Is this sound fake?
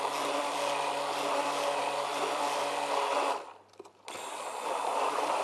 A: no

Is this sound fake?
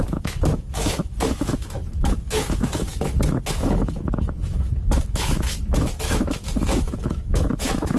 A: yes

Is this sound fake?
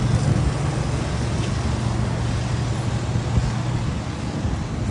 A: no